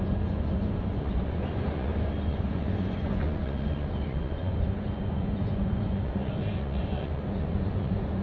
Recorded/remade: remade